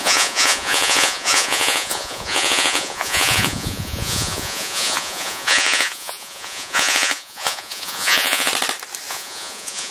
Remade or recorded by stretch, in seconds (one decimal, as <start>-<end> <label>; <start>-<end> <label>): 0.0-8.5 remade; 8.5-9.1 recorded; 9.1-9.9 remade